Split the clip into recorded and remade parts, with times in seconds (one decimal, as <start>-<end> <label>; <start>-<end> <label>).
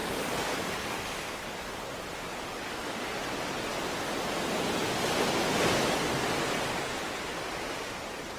0.0-1.7 remade; 1.7-2.5 recorded; 2.5-3.2 remade; 3.2-8.4 recorded